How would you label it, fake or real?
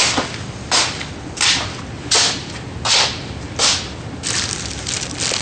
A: real